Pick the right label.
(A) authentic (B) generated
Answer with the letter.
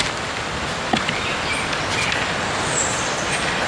A